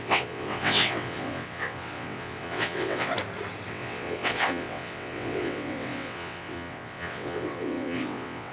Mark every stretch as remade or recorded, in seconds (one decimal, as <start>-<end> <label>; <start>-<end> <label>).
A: 0.0-3.1 remade; 3.1-3.7 recorded; 3.7-8.5 remade